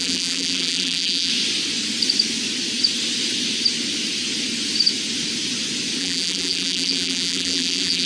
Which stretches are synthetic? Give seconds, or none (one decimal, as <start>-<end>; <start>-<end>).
0.0-1.3; 6.0-8.1